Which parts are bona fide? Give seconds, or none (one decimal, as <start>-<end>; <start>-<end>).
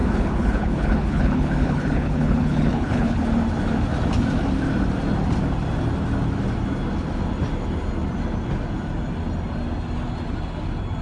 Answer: 3.2-11.0